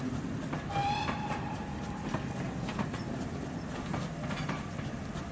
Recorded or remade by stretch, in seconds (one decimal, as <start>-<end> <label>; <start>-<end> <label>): 0.0-0.8 recorded; 0.8-1.6 remade; 1.6-2.7 recorded; 2.7-3.4 remade; 3.4-5.3 recorded